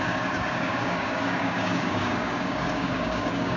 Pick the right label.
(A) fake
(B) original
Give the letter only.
A